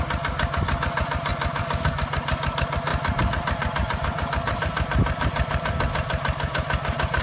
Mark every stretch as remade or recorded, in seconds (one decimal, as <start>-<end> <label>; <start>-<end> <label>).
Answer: 0.0-1.3 recorded; 1.3-1.9 remade; 1.9-2.9 recorded; 2.9-7.2 remade